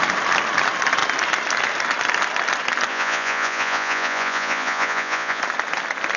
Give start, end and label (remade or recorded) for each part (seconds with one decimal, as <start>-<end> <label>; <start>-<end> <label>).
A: 0.0-2.9 recorded; 2.9-5.4 remade; 5.4-6.2 recorded